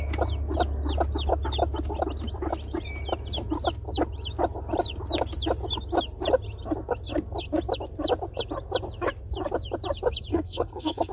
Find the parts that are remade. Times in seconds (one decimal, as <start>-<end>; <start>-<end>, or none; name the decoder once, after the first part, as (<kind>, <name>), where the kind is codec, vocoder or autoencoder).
10.3-11.1 (codec, SNAC)